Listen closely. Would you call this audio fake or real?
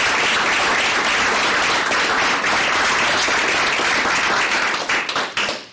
real